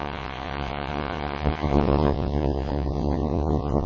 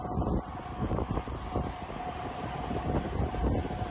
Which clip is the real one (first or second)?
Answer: second